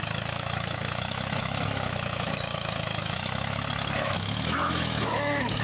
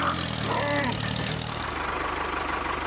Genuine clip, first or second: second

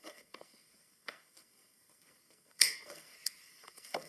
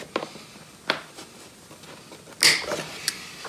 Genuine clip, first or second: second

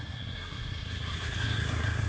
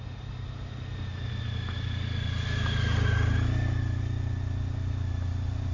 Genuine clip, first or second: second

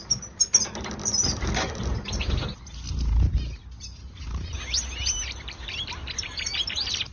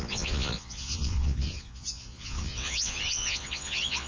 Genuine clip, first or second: first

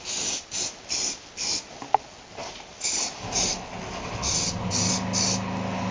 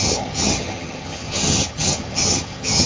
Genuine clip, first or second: first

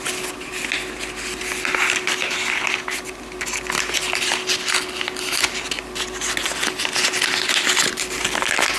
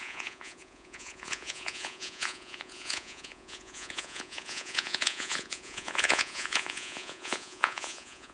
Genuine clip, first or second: first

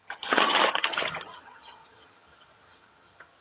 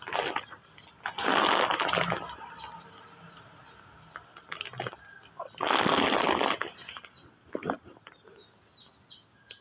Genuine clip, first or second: second